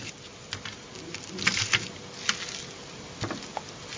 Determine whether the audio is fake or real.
real